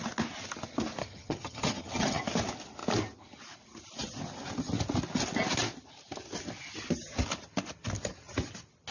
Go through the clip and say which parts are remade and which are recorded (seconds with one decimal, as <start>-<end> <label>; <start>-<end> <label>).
0.0-1.0 recorded; 1.0-2.2 remade; 2.2-8.9 recorded